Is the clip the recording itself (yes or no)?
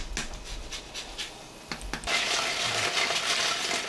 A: yes